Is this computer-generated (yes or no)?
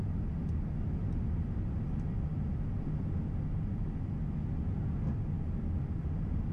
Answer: no